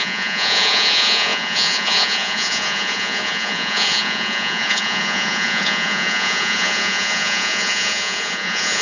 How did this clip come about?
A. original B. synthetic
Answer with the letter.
B